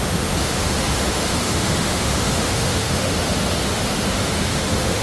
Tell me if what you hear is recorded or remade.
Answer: remade